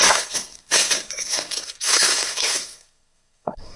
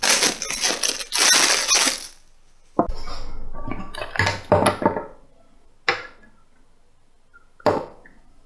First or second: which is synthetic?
first